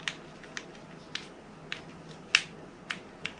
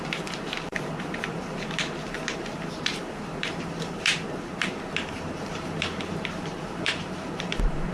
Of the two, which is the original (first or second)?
first